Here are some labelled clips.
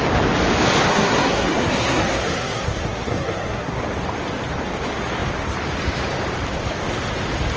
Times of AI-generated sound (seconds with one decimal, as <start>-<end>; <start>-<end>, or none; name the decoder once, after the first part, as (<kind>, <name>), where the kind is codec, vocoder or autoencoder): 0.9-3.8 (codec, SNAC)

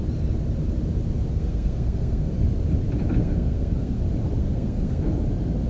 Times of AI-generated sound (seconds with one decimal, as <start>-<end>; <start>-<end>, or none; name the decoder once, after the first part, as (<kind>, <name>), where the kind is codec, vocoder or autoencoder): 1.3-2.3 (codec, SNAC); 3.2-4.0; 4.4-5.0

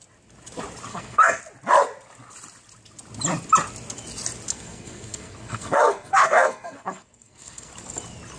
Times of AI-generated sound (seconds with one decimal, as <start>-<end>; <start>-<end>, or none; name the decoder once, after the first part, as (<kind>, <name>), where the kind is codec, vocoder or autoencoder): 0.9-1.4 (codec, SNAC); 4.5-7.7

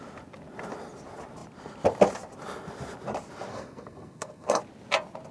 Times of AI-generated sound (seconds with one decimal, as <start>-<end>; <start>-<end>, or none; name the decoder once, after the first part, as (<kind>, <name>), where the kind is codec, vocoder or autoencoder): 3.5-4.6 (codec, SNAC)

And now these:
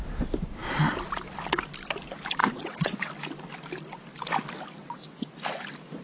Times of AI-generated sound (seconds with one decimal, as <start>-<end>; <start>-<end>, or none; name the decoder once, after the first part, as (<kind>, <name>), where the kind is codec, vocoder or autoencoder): 2.4-3.1 (vocoder, WaveNeXt); 4.8-5.3